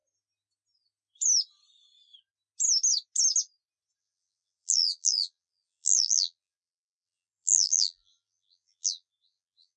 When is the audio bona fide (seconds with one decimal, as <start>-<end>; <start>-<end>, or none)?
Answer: 0.0-4.0